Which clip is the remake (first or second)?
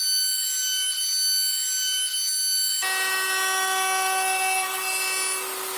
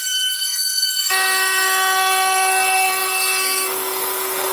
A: second